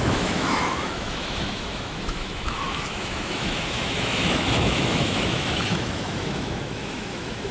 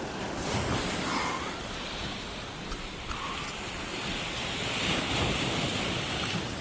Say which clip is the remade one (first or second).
first